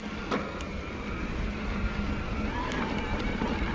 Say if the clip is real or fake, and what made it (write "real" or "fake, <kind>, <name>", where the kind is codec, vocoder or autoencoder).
real